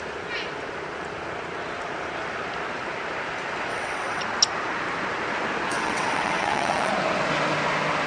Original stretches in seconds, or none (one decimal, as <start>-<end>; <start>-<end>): 0.0-3.7; 4.2-5.7; 6.9-8.1